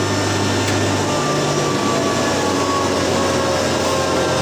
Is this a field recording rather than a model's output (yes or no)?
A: yes